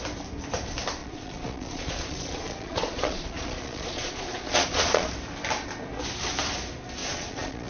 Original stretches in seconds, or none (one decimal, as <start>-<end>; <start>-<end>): 0.0-1.0; 5.1-7.0

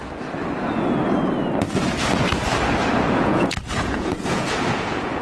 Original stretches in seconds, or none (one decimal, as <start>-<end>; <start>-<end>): 0.0-3.0

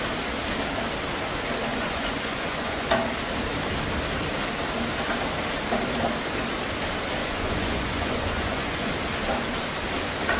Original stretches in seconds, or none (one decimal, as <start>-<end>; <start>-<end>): 0.0-1.7; 2.9-7.2; 8.9-10.4

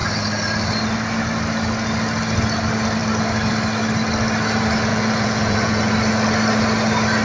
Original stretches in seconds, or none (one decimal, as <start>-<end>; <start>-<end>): 0.0-4.9; 5.9-7.2

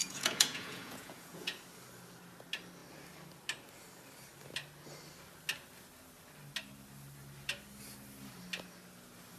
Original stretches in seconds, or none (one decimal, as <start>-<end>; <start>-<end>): 1.6-9.4

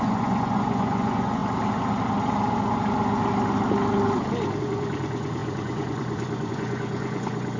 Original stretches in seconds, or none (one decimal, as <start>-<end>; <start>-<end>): 1.4-4.6

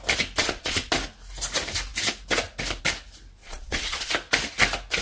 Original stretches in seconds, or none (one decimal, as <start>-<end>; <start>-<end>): 0.0-0.4; 0.9-3.4; 4.1-5.0

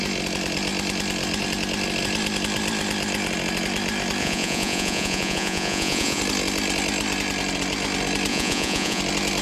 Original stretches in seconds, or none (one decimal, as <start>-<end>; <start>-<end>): 0.0-4.2; 6.2-8.3; 9.0-9.4